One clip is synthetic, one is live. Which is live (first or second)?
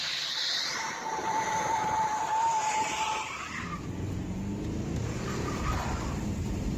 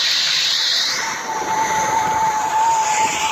second